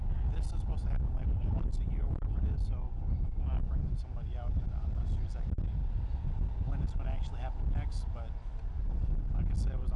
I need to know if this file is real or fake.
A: real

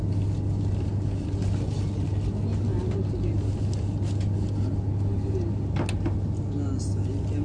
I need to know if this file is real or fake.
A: real